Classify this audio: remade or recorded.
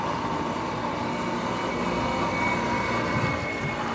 recorded